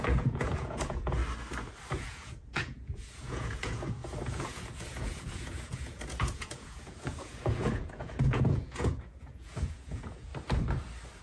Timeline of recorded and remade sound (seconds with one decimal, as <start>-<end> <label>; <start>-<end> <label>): 0.0-1.2 remade; 1.2-1.9 recorded; 1.9-10.3 remade; 10.3-11.2 recorded

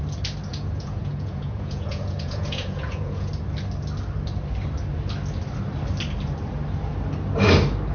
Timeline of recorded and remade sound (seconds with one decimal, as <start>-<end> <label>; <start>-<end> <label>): 0.0-0.5 recorded; 0.5-3.3 remade; 3.3-7.9 recorded